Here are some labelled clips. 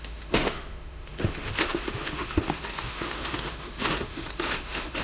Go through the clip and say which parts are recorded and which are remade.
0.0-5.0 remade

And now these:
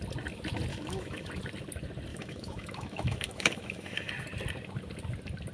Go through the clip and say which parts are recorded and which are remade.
0.0-0.7 recorded; 0.7-1.3 remade; 1.3-2.1 recorded; 2.1-4.1 remade; 4.1-5.5 recorded

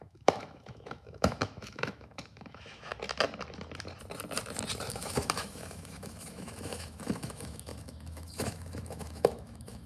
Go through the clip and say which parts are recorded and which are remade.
0.0-2.9 remade; 2.9-4.9 recorded; 4.9-9.9 remade

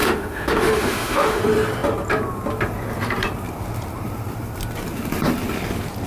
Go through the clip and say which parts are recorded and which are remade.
0.0-1.4 remade; 1.4-6.1 recorded

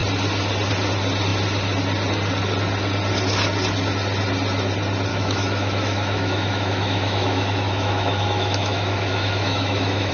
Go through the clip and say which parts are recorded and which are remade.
0.0-5.1 recorded; 5.1-10.1 remade